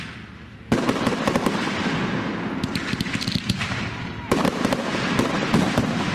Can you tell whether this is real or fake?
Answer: real